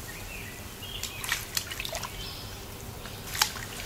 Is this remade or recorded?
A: recorded